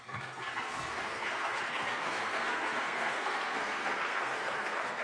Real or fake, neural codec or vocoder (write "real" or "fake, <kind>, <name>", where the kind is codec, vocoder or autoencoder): fake, codec, SNAC